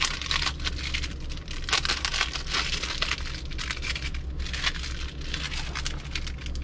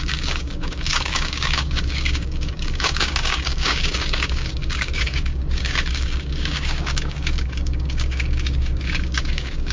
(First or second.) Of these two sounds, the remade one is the second